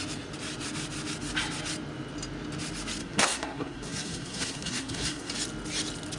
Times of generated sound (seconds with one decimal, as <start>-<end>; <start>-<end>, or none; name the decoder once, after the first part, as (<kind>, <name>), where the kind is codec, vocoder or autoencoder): 3.0-5.3 (codec, SNAC)